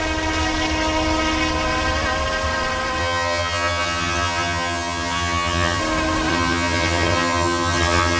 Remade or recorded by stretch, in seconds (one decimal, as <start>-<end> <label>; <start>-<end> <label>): 0.0-3.0 recorded; 3.0-5.8 remade; 5.8-6.3 recorded; 6.3-8.2 remade